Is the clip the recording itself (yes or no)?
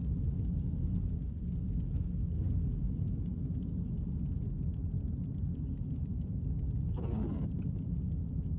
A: yes